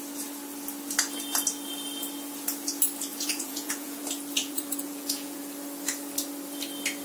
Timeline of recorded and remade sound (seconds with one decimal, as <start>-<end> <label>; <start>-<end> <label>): 0.0-3.1 recorded; 3.1-4.0 remade; 4.0-4.4 recorded; 4.4-5.4 remade; 5.4-7.0 recorded